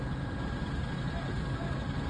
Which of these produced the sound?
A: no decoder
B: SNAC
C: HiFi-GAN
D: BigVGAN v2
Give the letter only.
A